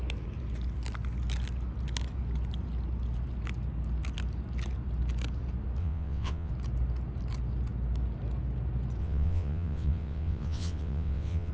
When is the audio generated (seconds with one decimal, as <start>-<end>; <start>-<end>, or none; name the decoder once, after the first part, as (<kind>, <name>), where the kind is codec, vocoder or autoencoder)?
5.8-6.5 (vocoder, WaveNeXt); 9.0-11.5